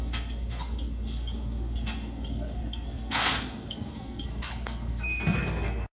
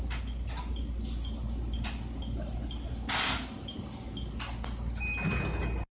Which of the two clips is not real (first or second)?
first